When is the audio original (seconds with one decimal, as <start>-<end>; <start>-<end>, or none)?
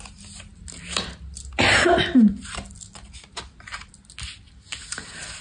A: 0.0-5.4